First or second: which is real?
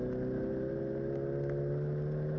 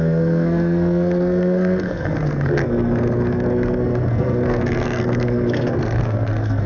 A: first